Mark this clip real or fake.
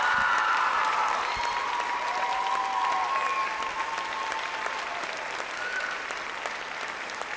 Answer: real